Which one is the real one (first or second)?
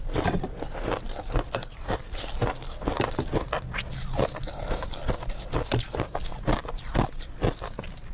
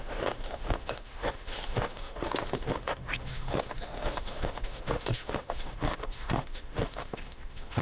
first